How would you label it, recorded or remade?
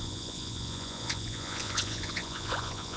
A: remade